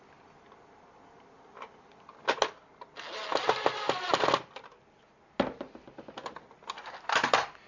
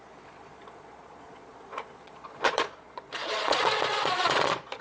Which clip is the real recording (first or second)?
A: first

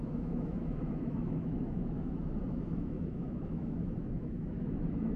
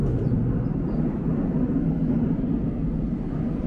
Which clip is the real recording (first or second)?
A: second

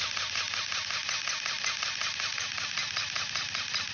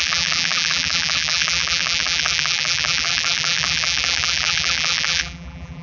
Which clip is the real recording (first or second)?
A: first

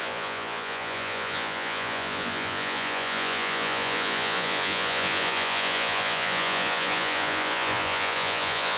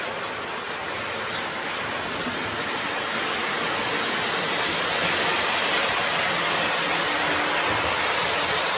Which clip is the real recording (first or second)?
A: second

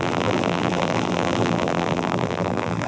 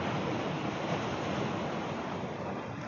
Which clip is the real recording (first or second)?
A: second